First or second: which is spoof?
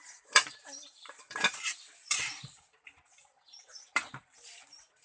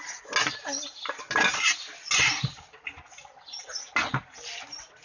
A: first